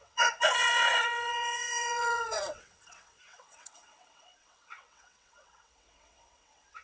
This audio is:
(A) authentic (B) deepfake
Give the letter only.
B